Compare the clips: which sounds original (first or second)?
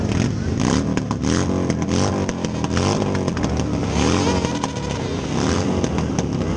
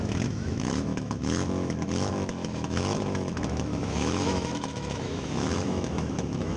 first